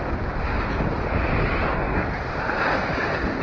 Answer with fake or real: real